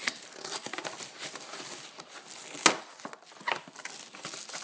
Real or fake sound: real